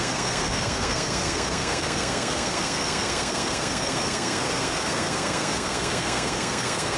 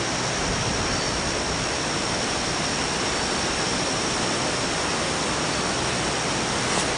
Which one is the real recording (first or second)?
second